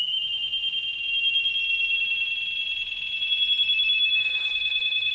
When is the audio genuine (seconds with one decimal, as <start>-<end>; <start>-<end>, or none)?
0.0-4.0